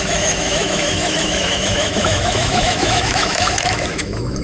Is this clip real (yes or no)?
no